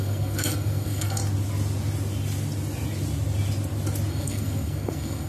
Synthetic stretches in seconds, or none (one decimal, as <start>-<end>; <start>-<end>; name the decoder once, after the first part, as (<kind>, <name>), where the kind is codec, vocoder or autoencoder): 0.0-1.2 (codec, SNAC); 4.1-5.3